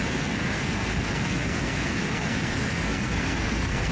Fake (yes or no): yes